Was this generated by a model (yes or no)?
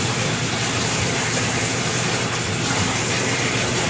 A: yes